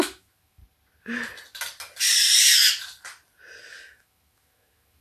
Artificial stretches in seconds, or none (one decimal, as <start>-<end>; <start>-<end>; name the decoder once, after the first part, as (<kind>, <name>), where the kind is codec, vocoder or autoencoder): 0.0-0.6 (autoencoder, DAC-VAE); 3.6-5.0